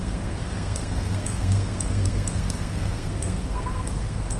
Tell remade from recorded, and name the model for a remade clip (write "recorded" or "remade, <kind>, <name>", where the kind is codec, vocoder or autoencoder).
remade, codec, SNAC